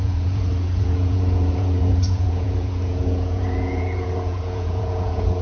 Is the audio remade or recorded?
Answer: remade